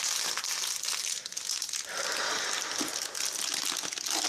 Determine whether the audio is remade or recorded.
recorded